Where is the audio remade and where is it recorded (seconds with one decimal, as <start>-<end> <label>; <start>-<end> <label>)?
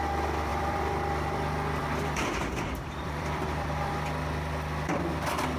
0.0-0.5 recorded; 0.5-3.9 remade; 3.9-5.6 recorded